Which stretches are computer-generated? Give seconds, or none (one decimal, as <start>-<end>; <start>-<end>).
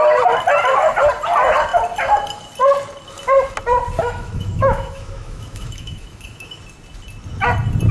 4.0-6.6